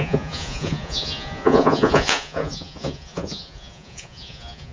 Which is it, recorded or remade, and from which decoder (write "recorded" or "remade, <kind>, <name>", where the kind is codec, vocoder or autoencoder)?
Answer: remade, vocoder, Vocos